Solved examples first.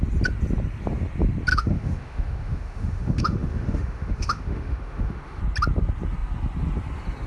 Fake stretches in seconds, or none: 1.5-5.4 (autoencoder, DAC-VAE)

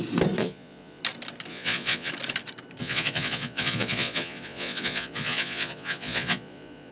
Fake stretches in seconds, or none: 0.4-1.0 (vocoder, Vocos); 1.5-2.1; 2.8-6.9

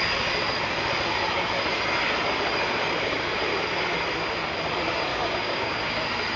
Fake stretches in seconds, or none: 5.1-5.8 (codec, DAC)

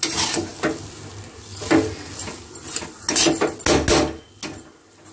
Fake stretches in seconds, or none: none